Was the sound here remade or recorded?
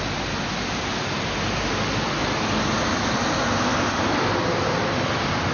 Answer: recorded